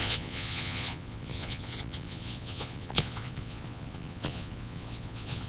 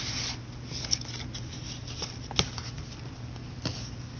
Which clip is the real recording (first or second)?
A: second